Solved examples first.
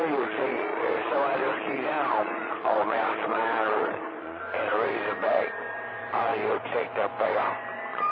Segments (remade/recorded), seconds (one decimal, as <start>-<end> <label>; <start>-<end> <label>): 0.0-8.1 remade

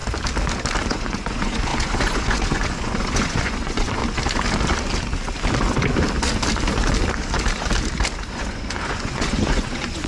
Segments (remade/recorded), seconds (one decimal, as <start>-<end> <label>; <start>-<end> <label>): 0.0-0.9 recorded; 0.9-4.0 remade; 4.0-8.3 recorded; 8.3-10.1 remade

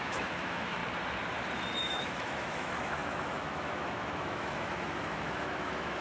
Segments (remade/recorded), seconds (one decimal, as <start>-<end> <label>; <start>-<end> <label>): 0.0-0.8 remade; 0.8-1.8 recorded; 1.8-6.0 remade

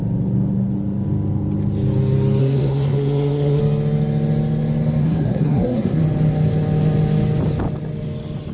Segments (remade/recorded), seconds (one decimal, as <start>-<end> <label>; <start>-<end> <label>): 0.0-2.4 recorded; 2.4-3.6 remade; 3.6-5.0 recorded; 5.0-6.0 remade; 6.0-8.5 recorded

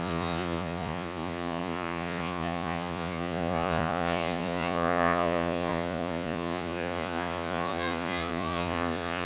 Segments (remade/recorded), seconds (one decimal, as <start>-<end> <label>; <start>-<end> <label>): 0.0-9.3 remade

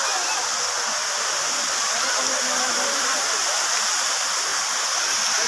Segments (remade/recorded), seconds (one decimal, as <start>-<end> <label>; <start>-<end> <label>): 0.0-5.5 recorded